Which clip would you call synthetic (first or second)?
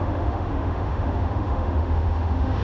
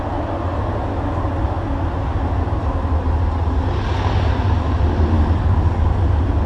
first